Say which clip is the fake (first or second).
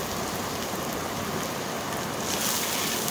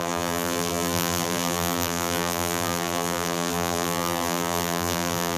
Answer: second